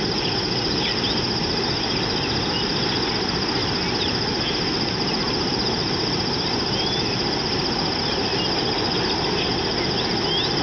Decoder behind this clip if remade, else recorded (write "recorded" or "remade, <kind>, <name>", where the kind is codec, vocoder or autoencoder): recorded